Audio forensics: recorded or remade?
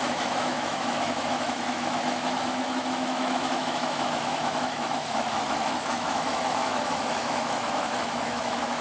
remade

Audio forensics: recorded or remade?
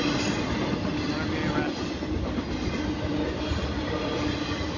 recorded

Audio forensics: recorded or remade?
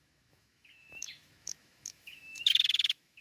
remade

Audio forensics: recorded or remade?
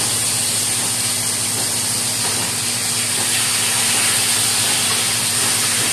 recorded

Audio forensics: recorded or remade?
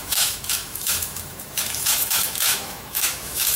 remade